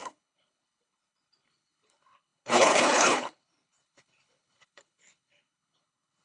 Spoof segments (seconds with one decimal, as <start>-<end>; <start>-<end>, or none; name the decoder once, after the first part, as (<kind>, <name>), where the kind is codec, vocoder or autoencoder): 0.0-6.2 (codec, HILCodec)